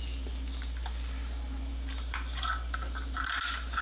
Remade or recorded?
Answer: recorded